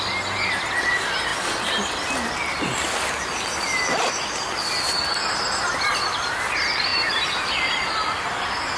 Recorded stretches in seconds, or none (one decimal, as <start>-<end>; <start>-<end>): 1.3-4.0; 6.9-7.7